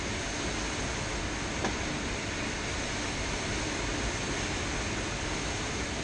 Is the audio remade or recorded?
recorded